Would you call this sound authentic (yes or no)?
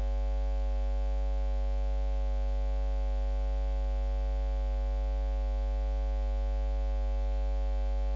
yes